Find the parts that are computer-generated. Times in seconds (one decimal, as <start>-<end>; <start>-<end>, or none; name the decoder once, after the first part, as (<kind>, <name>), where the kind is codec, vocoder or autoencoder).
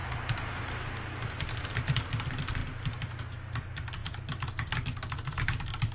none